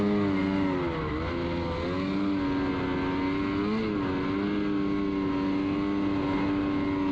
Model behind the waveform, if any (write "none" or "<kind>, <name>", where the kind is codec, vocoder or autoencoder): none